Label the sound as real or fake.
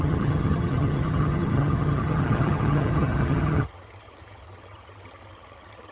fake